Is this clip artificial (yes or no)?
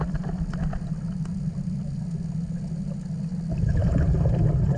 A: no